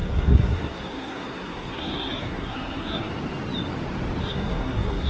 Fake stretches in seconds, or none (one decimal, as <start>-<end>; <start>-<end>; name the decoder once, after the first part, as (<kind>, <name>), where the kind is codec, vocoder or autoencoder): 0.0-3.1 (codec, SNAC); 4.2-5.1